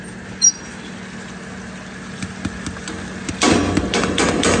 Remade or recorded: recorded